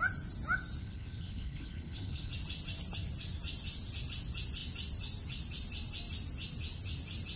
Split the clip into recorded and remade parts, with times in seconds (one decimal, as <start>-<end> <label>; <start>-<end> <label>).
0.0-0.8 recorded; 0.8-2.3 remade; 2.3-7.4 recorded